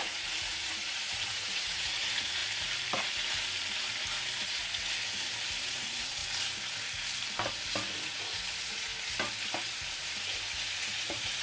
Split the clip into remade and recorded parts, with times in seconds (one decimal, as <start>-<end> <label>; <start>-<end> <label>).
0.0-2.4 remade; 2.4-5.6 recorded; 5.6-6.2 remade; 6.2-8.0 recorded; 8.0-8.9 remade; 8.9-10.8 recorded; 10.8-11.4 remade